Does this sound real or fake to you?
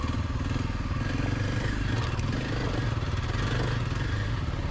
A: real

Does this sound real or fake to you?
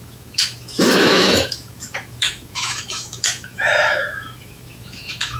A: fake